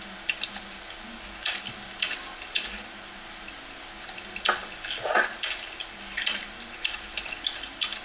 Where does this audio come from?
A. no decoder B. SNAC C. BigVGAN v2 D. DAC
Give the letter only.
A